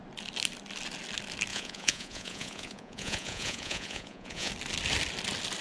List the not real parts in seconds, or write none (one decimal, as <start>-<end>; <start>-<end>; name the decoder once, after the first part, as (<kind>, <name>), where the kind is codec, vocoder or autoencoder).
1.5-4.5 (vocoder, Vocos)